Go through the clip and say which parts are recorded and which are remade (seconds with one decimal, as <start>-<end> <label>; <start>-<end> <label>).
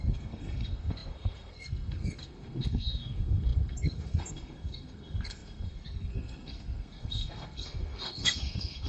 0.0-8.9 remade